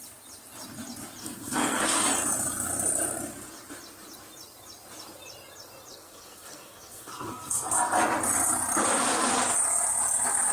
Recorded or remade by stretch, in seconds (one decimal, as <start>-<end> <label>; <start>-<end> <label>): 0.0-1.2 recorded; 1.2-2.0 remade; 2.0-5.9 recorded; 5.9-7.7 remade; 7.7-10.5 recorded